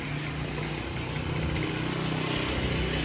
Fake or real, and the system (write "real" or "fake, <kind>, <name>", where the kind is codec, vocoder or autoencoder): real